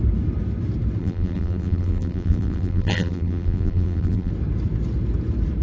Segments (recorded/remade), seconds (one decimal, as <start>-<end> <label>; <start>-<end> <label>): 0.0-1.0 recorded; 1.0-4.3 remade; 4.3-5.6 recorded